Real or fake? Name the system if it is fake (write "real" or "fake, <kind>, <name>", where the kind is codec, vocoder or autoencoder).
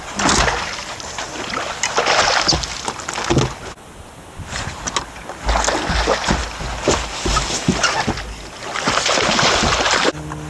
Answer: real